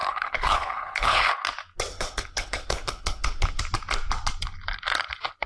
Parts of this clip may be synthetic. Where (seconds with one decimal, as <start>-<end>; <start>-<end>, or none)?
0.0-1.3; 1.9-3.6